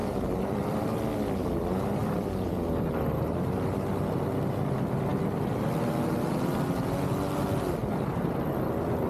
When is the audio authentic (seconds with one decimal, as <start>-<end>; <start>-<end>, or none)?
0.8-2.0; 2.7-9.1